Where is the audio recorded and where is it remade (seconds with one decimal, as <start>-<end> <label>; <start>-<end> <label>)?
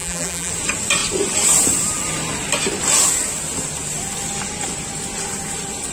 0.0-0.5 remade; 0.5-5.9 recorded